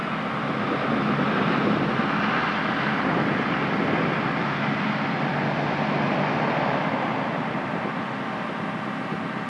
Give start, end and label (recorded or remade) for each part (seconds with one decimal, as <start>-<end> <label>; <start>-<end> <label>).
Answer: 0.0-9.5 recorded

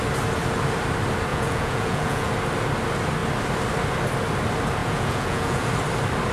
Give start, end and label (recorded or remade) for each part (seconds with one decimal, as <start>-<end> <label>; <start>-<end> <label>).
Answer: 0.0-1.3 recorded; 1.3-2.3 remade; 2.3-4.8 recorded; 4.8-5.7 remade; 5.7-6.3 recorded